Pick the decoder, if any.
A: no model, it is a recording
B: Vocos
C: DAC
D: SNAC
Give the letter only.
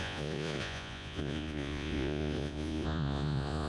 B